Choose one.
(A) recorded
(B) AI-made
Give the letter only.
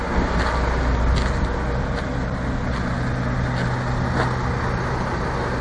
A